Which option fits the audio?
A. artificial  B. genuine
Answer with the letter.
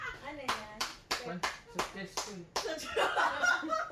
A